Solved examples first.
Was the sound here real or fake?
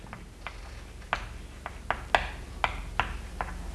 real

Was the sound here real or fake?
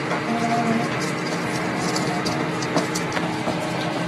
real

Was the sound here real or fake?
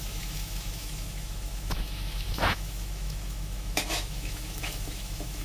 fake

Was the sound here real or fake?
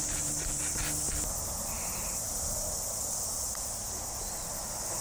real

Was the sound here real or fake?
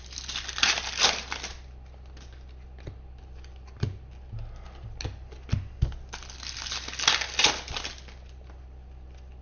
real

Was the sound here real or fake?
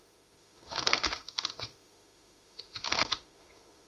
fake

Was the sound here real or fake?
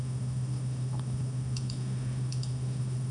fake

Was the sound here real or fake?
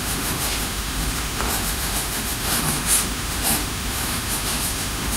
fake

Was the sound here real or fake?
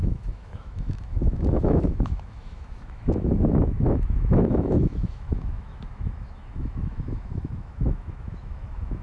fake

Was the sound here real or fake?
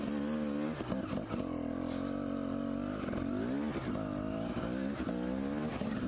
real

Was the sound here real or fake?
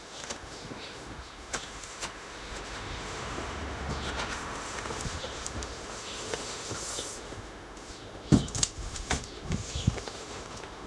fake